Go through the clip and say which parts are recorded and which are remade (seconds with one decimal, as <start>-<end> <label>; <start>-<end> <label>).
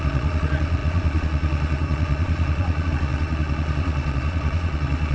0.0-5.1 remade